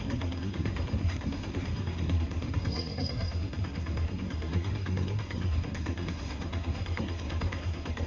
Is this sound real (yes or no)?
no